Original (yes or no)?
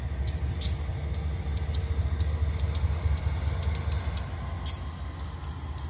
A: yes